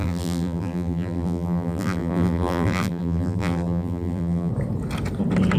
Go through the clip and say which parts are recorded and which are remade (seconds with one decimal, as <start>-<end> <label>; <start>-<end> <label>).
0.0-4.5 remade; 4.5-5.6 recorded